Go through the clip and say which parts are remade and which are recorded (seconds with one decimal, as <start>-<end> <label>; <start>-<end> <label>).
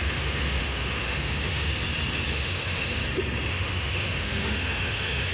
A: 0.0-1.7 remade; 1.7-2.3 recorded; 2.3-3.0 remade; 3.0-3.5 recorded; 3.5-5.3 remade